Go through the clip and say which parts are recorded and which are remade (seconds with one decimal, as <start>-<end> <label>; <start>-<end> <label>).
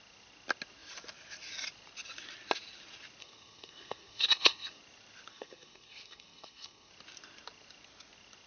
0.0-3.2 recorded; 3.2-4.8 remade; 4.8-5.3 recorded; 5.3-6.9 remade; 6.9-8.5 recorded